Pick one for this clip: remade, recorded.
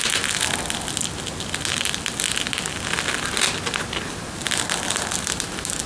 recorded